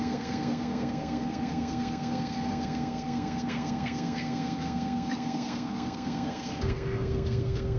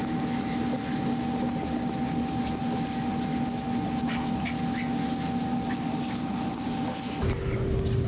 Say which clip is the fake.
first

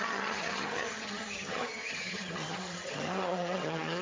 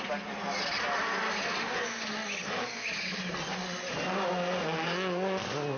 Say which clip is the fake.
first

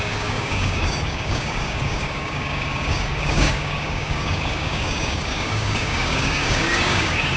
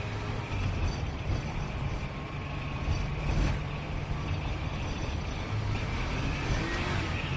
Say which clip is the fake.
first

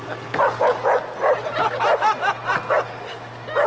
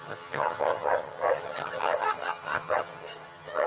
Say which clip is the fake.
second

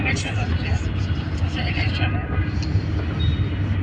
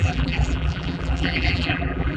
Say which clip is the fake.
second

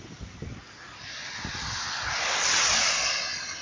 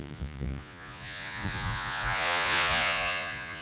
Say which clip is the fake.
second